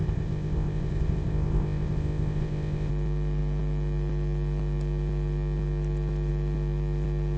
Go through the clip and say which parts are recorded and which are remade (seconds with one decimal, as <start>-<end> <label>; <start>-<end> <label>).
0.0-2.9 remade; 2.9-7.4 recorded